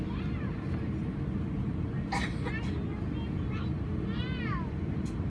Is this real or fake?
real